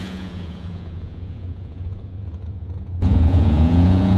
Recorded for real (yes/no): no